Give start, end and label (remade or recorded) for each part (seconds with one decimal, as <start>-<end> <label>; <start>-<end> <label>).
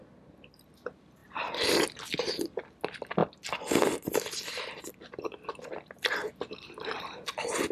0.0-7.7 recorded